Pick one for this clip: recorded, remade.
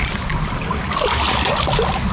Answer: recorded